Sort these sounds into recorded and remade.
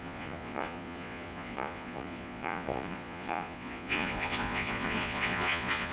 remade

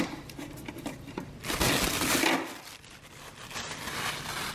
recorded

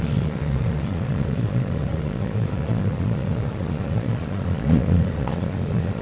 remade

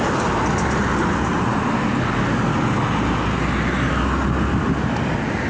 recorded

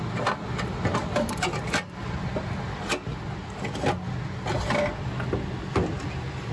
recorded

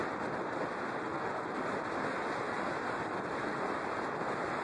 recorded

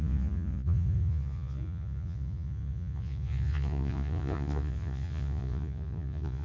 remade